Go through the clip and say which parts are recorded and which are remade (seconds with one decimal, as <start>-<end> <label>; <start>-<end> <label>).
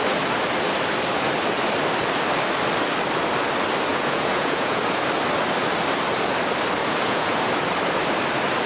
0.0-3.9 recorded; 3.9-4.8 remade; 4.8-6.8 recorded; 6.8-7.5 remade; 7.5-8.7 recorded